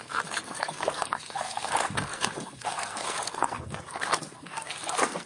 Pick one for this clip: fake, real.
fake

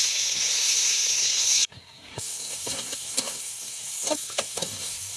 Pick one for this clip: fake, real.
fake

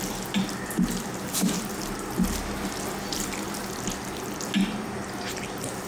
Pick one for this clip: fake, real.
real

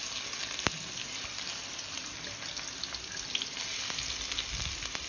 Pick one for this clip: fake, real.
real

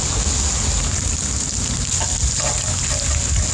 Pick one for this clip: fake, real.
real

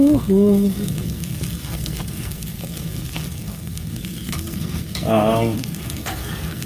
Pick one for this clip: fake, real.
fake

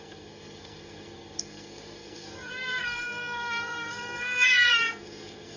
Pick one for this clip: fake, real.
fake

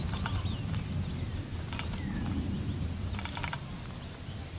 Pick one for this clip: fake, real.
real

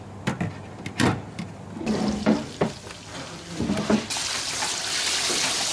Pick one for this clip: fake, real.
real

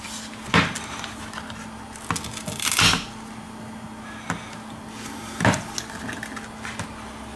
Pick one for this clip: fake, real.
real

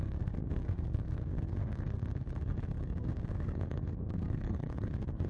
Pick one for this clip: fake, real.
fake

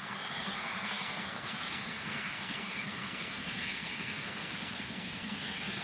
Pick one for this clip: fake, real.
fake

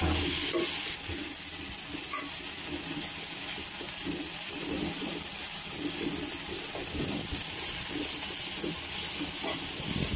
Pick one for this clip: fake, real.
real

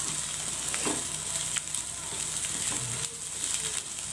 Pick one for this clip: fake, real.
real